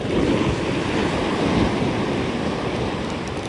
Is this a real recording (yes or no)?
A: no